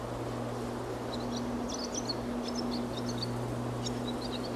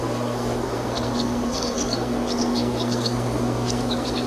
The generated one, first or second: second